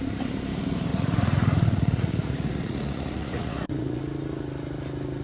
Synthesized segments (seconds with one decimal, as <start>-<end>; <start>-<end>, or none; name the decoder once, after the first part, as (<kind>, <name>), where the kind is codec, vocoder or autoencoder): 0.9-4.0 (vocoder, Vocos)